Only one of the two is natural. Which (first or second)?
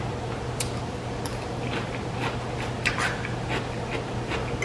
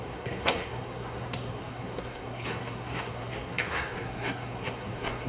first